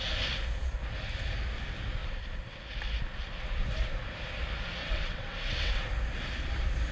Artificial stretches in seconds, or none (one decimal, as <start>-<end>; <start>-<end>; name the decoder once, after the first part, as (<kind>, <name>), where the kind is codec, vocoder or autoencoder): 4.8-5.9 (vocoder, WaveNeXt)